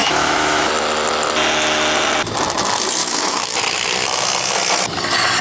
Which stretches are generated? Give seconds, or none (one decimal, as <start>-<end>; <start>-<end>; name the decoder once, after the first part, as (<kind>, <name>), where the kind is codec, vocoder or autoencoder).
0.0-0.7 (autoencoder, DAC-VAE); 3.0-3.5